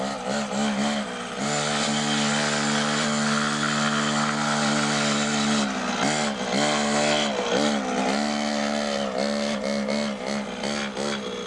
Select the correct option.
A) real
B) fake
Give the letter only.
A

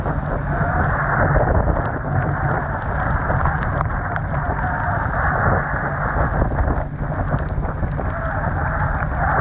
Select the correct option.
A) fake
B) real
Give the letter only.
B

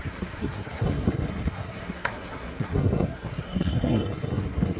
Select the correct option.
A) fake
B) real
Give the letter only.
A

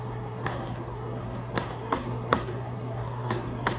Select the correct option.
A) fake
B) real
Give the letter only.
A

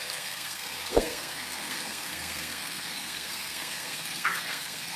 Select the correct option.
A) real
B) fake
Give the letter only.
B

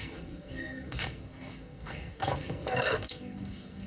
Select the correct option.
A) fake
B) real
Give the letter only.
A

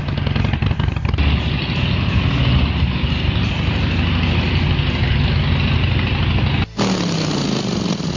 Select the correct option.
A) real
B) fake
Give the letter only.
A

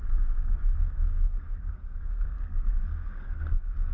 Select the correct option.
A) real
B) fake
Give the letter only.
B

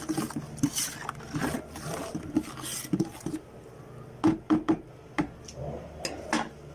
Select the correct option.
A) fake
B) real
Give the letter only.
B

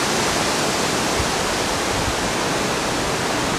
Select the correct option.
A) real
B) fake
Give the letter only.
A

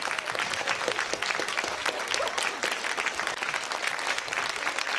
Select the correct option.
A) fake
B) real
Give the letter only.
B